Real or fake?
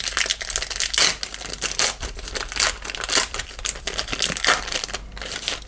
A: real